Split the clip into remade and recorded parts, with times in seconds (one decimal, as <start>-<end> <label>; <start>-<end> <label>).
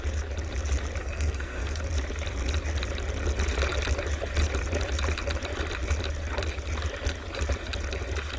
0.0-1.0 recorded; 1.0-1.8 remade; 1.8-8.4 recorded